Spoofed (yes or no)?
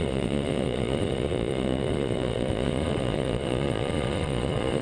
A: yes